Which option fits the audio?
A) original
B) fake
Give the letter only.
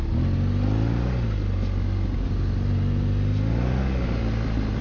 A